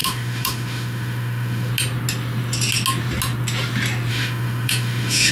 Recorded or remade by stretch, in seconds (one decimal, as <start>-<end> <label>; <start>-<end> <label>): 0.0-1.7 remade; 1.7-4.1 recorded; 4.1-5.3 remade